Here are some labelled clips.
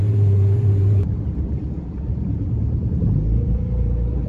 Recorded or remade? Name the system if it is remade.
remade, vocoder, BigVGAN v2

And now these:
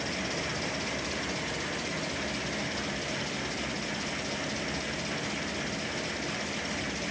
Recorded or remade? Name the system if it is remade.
recorded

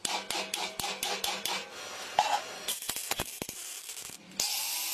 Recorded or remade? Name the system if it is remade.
recorded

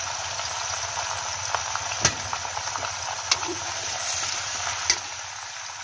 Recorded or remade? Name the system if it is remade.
recorded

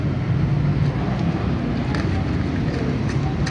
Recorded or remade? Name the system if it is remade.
recorded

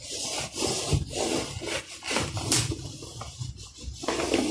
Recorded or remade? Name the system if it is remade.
recorded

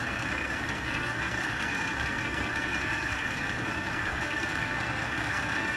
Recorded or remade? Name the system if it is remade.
remade, codec, SNAC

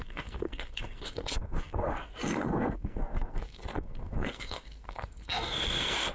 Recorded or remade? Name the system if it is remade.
remade, codec, SNAC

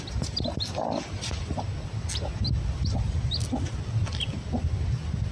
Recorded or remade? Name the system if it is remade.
recorded